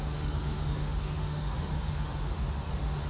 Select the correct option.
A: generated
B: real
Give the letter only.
A